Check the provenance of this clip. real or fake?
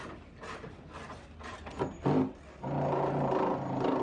real